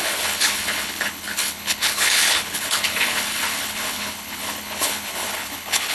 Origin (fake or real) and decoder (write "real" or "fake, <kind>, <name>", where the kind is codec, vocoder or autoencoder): fake, codec, HILCodec